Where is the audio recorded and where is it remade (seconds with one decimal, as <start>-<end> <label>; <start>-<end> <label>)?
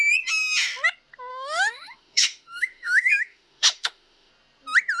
0.0-1.3 recorded; 1.3-4.3 remade; 4.3-5.0 recorded